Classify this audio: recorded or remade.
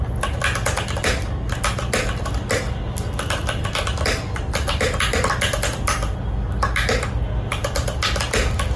recorded